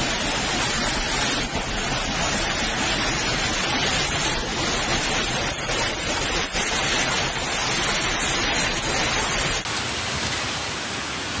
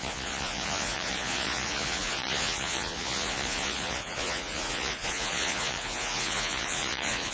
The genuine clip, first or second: first